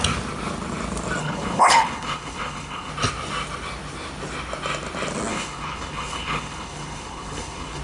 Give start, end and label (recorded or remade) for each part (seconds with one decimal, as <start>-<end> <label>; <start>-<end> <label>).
0.0-1.2 recorded; 1.2-2.9 remade; 2.9-5.3 recorded; 5.3-7.8 remade